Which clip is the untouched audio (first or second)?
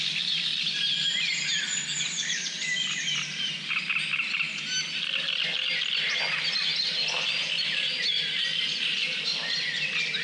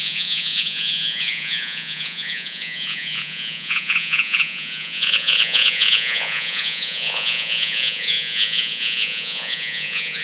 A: first